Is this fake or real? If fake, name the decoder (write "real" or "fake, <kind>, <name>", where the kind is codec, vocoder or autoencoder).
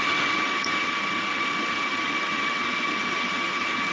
fake, vocoder, HiFi-GAN